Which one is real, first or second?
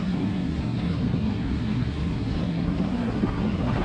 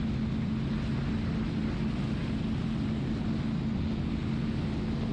second